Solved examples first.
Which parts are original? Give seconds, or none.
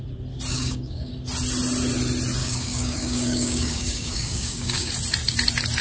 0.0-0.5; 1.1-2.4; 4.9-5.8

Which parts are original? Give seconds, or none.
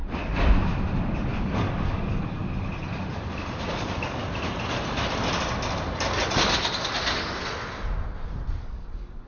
0.0-1.3; 2.4-3.7; 4.2-8.6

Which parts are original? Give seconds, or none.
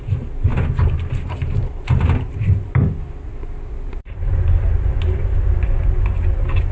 0.0-6.7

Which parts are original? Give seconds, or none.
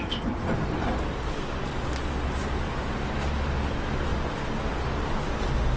0.0-5.8